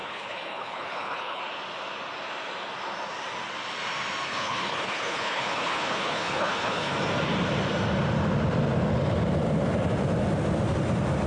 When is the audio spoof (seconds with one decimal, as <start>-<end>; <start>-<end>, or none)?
0.0-1.4; 4.3-6.9